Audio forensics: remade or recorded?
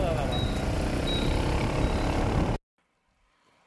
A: recorded